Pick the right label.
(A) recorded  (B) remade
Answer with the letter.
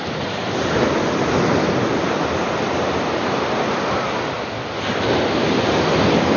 A